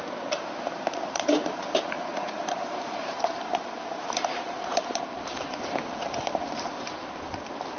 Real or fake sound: fake